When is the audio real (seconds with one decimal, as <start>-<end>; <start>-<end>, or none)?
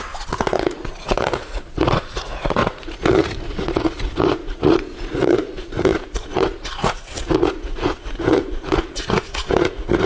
none